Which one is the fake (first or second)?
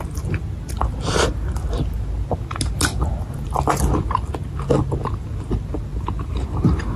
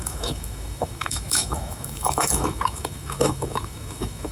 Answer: second